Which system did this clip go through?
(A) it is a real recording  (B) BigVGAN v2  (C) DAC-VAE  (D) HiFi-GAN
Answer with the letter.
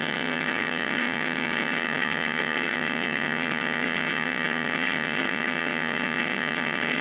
D